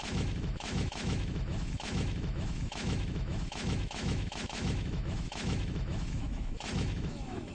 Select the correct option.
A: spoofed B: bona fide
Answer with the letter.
A